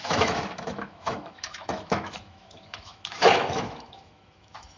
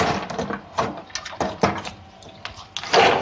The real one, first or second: second